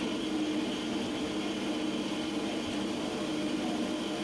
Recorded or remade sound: recorded